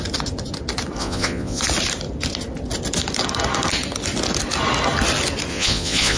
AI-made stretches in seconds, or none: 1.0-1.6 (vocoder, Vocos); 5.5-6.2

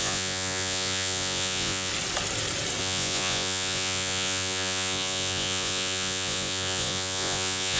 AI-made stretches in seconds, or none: 0.0-1.9 (vocoder, Vocos); 2.8-7.8

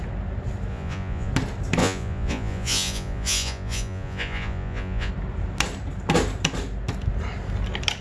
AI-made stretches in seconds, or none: 0.7-1.3 (vocoder, Vocos); 1.8-5.1

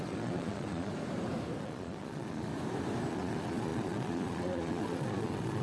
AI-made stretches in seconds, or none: 0.0-0.9 (vocoder, Vocos); 1.6-2.5; 3.1-5.6

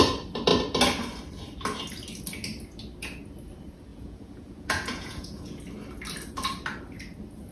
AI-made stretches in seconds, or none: 3.9-5.6 (vocoder, Vocos)

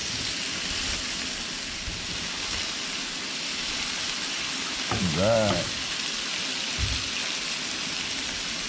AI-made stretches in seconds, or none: none

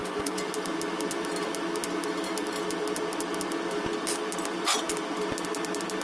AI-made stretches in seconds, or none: 0.0-0.5 (vocoder, Vocos)

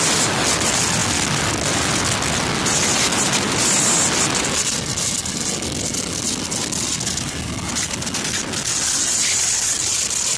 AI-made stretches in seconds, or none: none